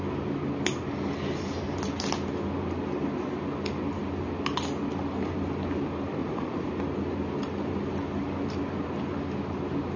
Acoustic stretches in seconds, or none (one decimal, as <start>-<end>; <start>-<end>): 0.0-6.2; 6.7-10.0